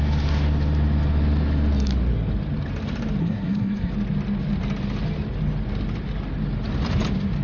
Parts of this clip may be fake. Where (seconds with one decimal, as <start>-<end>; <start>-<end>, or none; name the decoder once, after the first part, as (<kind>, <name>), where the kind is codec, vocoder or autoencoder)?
3.2-3.9 (codec, SNAC)